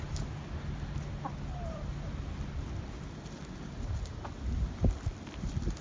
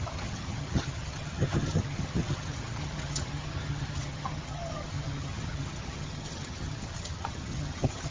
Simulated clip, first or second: second